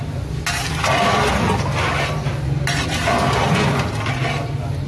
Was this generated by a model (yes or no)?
no